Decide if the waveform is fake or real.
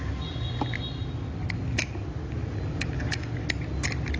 real